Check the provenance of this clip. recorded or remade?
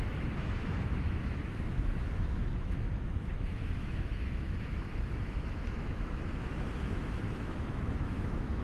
remade